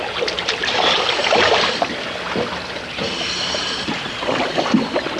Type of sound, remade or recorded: recorded